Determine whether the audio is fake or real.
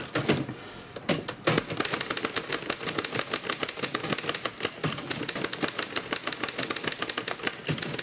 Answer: real